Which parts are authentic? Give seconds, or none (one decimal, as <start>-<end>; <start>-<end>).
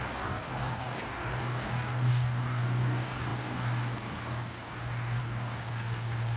none